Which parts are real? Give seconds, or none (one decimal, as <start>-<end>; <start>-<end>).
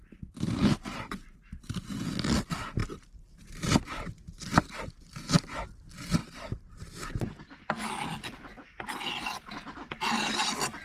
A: 0.0-2.8; 5.0-6.2; 6.7-10.8